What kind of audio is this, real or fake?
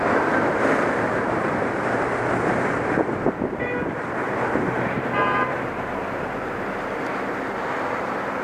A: fake